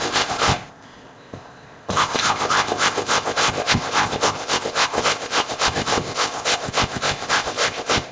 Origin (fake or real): fake